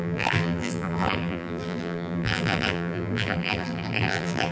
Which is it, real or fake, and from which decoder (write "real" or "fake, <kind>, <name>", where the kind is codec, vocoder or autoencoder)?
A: fake, vocoder, BigVGAN v2